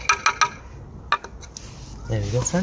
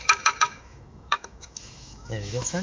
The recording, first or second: first